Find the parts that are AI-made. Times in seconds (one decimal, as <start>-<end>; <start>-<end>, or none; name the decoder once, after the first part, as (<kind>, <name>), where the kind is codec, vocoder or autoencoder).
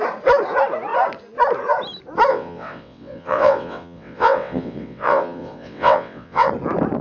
2.3-6.5 (vocoder, WaveNeXt)